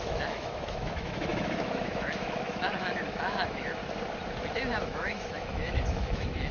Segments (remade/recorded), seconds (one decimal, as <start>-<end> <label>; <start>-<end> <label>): 0.0-3.8 remade; 3.8-4.8 recorded; 4.8-6.5 remade